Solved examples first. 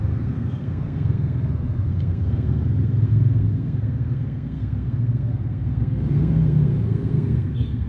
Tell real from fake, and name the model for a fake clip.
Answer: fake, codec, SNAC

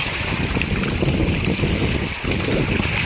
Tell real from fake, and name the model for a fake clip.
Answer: fake, vocoder, BigVGAN v2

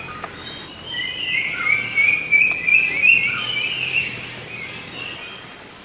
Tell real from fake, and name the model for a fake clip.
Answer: real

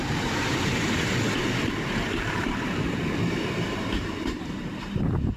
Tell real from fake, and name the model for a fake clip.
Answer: fake, vocoder, BigVGAN v2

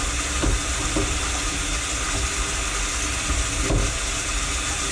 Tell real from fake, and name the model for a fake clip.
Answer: real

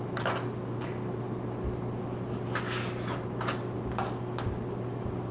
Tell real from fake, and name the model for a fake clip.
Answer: real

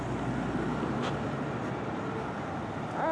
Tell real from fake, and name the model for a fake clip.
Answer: real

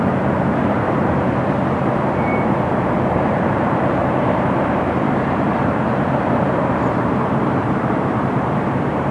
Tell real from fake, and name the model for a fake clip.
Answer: fake, vocoder, BigVGAN v2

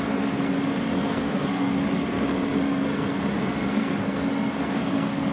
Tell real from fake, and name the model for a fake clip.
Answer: fake, codec, SNAC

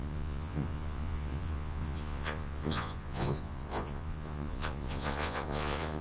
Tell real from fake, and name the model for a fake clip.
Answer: fake, vocoder, Vocos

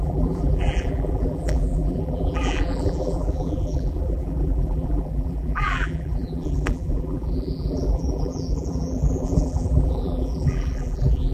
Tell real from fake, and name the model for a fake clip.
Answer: fake, vocoder, BigVGAN v2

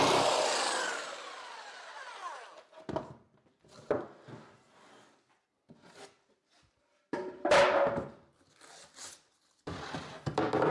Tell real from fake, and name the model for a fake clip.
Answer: real